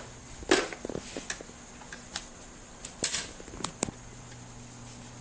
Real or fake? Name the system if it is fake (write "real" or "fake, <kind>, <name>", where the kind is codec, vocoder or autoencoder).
real